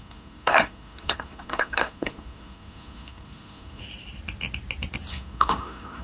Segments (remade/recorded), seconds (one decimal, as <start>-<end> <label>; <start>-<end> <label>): 0.0-3.8 remade; 3.8-5.1 recorded; 5.1-6.0 remade